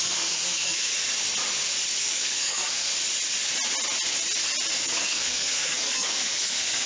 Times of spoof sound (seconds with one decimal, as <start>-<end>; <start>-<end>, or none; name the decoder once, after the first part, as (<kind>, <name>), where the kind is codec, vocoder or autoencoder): 0.0-0.9 (codec, SNAC); 2.0-2.9; 4.9-6.9